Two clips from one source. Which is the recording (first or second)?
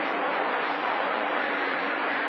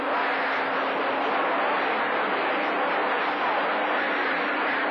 second